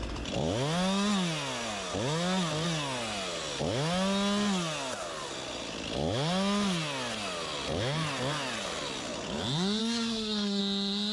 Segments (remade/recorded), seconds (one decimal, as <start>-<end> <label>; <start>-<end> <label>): 0.0-9.8 recorded; 9.8-10.6 remade; 10.6-11.1 recorded